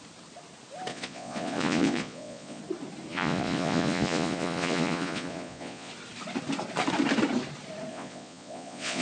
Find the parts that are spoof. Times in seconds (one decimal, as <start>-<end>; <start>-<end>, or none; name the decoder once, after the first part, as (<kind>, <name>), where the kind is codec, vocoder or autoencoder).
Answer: 0.9-2.6 (vocoder, Vocos); 3.1-5.9; 7.9-9.0